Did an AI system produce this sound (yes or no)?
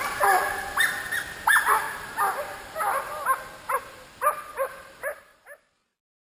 no